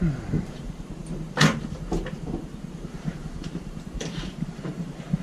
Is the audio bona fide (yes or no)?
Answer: no